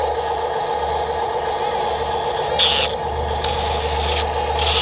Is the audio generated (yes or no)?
no